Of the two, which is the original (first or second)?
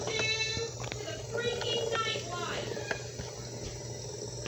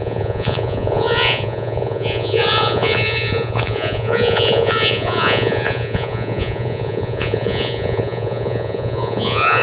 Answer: first